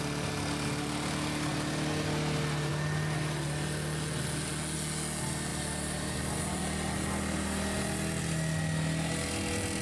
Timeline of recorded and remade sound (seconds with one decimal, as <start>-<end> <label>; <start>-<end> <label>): 0.0-5.5 recorded; 5.5-6.4 remade; 6.4-9.8 recorded